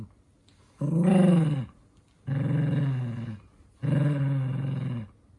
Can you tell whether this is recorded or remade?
recorded